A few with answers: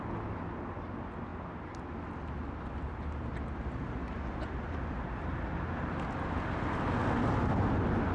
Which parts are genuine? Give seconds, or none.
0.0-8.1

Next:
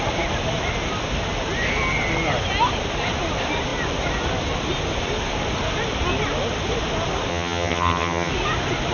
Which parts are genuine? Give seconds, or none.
0.0-7.3; 8.3-8.9

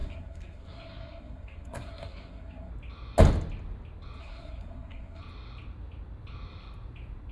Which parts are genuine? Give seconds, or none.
2.7-4.2; 5.2-7.3

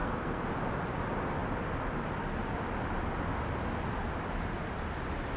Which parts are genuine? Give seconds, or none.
0.5-5.4

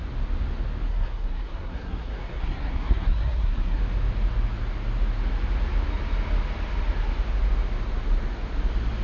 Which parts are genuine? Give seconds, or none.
0.0-0.9; 3.8-9.0

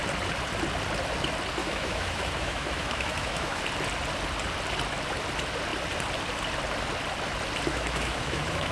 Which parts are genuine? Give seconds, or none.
0.0-1.6; 3.6-7.7

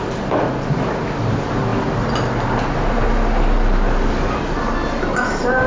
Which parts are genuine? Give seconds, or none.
0.0-5.7